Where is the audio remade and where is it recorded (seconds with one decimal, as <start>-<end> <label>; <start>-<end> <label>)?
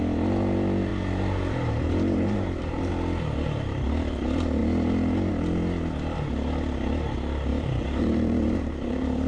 0.0-0.9 recorded; 0.9-2.9 remade; 2.9-7.5 recorded; 7.5-9.3 remade